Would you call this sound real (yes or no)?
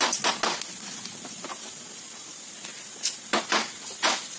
yes